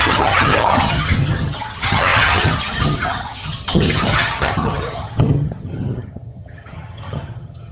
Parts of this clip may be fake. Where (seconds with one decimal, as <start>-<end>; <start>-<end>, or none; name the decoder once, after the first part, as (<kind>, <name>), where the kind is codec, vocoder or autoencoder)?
0.0-7.7 (vocoder, HiFi-GAN)